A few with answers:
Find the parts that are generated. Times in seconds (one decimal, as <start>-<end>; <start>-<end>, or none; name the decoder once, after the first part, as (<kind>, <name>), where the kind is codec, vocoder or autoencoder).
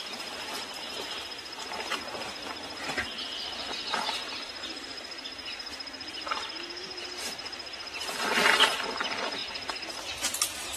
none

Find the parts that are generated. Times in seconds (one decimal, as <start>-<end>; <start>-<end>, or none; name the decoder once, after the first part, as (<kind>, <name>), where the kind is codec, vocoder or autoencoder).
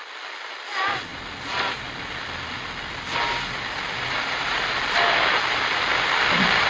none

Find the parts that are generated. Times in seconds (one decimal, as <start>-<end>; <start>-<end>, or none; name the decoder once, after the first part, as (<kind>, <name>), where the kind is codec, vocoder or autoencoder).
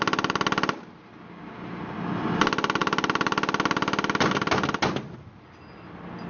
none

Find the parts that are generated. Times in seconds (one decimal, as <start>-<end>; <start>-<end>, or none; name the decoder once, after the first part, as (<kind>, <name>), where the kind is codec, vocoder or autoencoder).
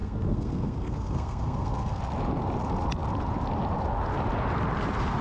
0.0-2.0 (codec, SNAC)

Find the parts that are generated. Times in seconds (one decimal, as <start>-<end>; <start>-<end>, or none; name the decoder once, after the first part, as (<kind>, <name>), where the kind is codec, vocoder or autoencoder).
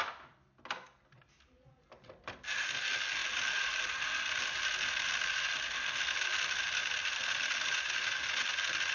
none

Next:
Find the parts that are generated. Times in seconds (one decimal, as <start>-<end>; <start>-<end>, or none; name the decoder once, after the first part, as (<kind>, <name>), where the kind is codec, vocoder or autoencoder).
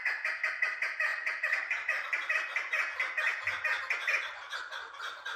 1.1-2.1 (vocoder, BigVGAN v2)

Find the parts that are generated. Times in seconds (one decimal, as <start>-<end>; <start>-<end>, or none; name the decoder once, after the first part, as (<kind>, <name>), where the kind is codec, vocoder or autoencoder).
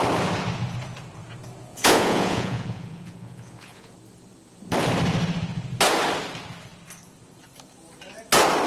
1.7-3.9 (vocoder, Vocos)